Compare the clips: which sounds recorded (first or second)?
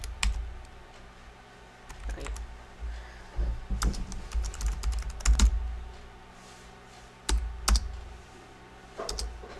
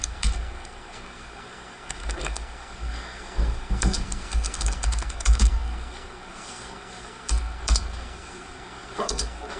first